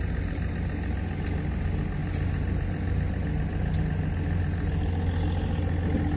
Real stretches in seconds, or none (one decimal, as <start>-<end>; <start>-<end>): 0.0-6.2